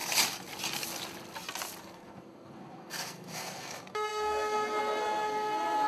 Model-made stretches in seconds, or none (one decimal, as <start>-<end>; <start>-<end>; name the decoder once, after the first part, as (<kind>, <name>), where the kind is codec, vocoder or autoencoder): 1.8-5.9 (codec, SNAC)